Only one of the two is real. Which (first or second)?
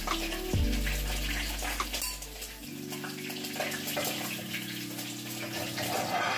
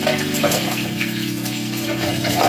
first